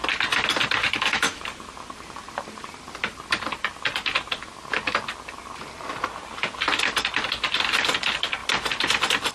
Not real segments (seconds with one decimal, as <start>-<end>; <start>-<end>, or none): 0.8-1.4